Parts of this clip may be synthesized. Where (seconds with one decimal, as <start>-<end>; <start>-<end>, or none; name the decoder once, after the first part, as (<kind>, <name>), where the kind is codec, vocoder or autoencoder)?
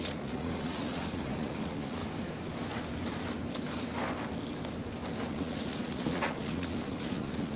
0.0-2.0 (vocoder, Vocos); 5.3-7.6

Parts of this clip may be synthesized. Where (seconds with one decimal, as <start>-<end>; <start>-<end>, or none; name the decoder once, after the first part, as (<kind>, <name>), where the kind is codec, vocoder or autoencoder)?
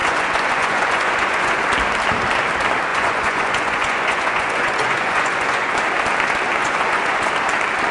0.0-1.6 (vocoder, Vocos); 2.9-5.7; 6.6-7.3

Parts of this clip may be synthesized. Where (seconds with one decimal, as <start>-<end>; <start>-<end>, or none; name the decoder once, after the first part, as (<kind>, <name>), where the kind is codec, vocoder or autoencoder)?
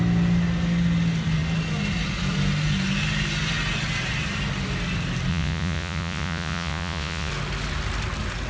5.3-7.3 (vocoder, Vocos)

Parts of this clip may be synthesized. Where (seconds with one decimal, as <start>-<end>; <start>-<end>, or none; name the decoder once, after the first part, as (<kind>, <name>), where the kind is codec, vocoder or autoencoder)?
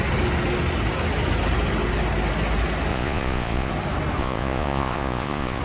2.9-3.7 (vocoder, Vocos); 4.2-5.6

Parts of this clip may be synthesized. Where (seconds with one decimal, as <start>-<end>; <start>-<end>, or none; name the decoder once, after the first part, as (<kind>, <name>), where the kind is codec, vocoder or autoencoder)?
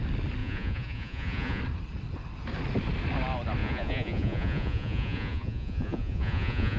0.4-1.6 (vocoder, Vocos); 3.6-6.8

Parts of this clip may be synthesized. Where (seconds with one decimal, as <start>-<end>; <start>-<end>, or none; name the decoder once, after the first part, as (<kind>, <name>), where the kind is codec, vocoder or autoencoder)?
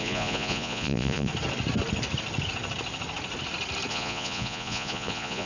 0.0-1.3 (vocoder, Vocos); 3.9-5.5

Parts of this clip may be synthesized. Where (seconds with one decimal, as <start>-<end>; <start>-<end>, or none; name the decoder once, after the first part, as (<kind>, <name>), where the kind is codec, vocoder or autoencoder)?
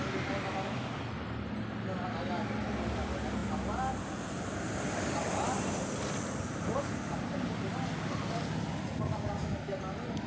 none